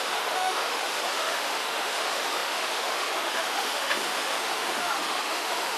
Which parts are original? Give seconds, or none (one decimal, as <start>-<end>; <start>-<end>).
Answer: none